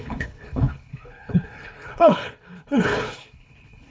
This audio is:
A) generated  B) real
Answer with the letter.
A